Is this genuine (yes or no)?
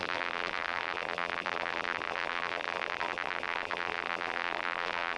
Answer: no